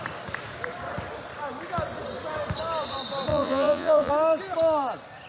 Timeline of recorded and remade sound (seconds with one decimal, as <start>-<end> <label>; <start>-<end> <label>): 0.0-3.3 recorded; 3.3-4.1 remade; 4.1-5.3 recorded